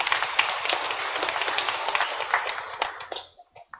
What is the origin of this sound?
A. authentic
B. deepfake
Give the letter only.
A